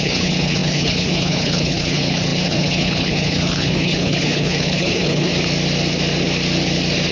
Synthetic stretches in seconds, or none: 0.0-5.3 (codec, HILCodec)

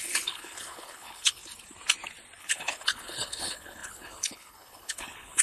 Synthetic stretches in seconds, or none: 0.0-1.4 (codec, HILCodec); 2.4-5.4

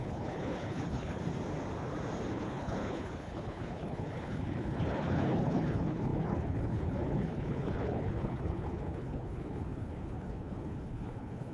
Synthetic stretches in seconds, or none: 0.0-1.2 (codec, HILCodec); 2.3-11.5

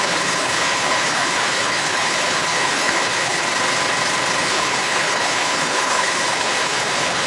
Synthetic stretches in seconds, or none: 0.0-3.4 (codec, HILCodec); 4.4-7.3